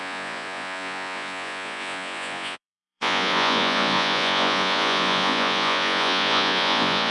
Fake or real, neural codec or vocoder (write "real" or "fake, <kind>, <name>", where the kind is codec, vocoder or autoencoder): fake, vocoder, Vocos